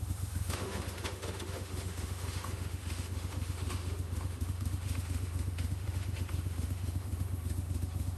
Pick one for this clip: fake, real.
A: fake